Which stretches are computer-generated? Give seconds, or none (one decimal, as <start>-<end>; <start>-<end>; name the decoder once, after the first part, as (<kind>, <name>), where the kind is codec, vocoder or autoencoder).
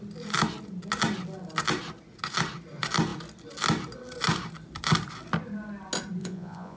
6.2-6.8 (vocoder, Vocos)